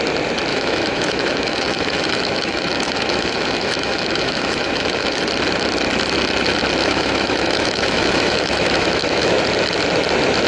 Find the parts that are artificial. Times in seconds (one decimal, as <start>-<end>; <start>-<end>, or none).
0.5-5.2; 6.8-9.4